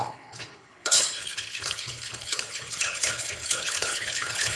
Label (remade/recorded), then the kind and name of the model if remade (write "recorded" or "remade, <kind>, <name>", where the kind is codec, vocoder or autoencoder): remade, codec, HILCodec